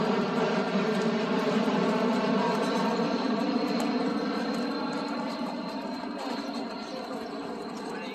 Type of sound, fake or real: fake